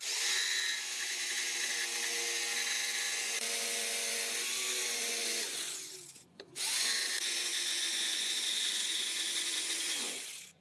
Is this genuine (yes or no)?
no